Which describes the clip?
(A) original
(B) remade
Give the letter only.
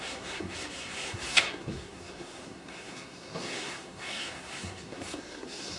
B